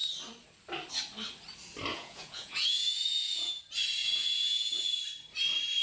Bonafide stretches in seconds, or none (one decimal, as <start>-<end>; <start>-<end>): 0.0-1.9; 3.6-4.0; 5.0-5.8